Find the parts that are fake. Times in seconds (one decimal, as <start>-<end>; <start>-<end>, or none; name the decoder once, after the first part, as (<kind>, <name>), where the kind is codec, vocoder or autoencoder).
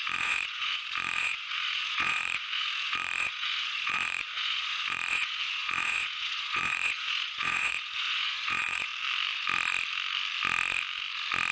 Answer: 0.0-8.9 (vocoder, Vocos)